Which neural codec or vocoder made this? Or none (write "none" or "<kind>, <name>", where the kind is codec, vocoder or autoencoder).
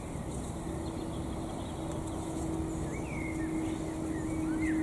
none